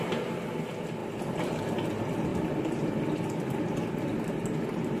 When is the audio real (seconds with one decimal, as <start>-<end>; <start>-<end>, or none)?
0.0-1.0; 1.6-2.3; 3.5-5.0